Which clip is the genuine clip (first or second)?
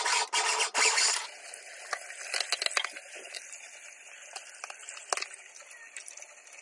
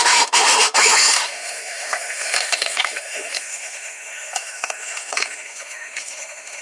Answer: first